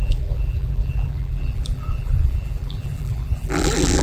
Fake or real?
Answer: fake